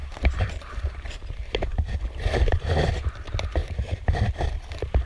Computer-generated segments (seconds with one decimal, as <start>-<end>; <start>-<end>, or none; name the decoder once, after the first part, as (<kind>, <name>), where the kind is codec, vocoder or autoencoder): 0.0-2.9 (vocoder, BigVGAN v2); 3.6-5.1